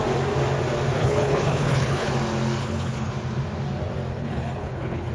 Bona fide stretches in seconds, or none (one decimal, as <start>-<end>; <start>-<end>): 0.0-1.0; 2.1-2.6; 3.1-4.1

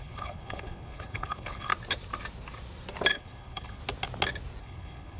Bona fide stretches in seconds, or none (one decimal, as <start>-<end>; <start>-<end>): 1.7-3.1; 3.8-4.6

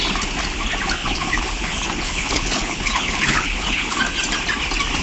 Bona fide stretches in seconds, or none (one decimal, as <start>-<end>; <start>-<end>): 0.0-1.0; 4.0-5.0

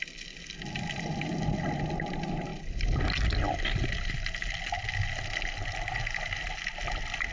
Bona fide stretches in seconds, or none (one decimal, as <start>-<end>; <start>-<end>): 0.0-7.3

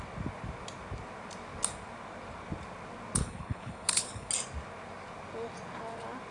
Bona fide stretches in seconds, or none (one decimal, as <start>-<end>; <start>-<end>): 0.0-3.2; 4.3-6.3

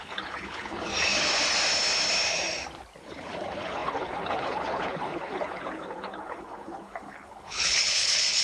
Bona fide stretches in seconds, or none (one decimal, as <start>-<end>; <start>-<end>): 0.9-3.0

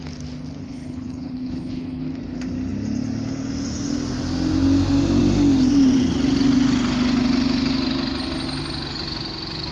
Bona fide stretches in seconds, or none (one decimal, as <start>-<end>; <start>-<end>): 0.0-0.6; 2.0-9.7